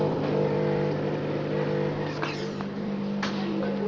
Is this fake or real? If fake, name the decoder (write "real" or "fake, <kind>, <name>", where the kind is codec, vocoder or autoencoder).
fake, vocoder, BigVGAN v2